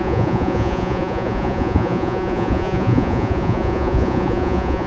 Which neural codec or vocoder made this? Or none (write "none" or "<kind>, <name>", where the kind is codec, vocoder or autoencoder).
vocoder, Vocos